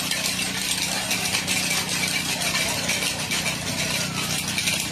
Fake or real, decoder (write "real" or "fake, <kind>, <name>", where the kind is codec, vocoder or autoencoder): real